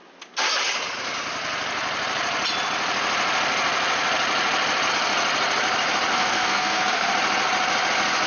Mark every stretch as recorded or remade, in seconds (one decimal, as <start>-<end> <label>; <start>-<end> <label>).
0.0-6.1 recorded; 6.1-7.1 remade; 7.1-8.3 recorded